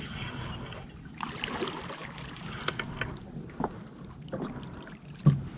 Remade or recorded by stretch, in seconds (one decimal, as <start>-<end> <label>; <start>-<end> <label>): 0.0-5.6 recorded